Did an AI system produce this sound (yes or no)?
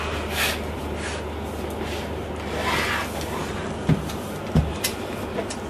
no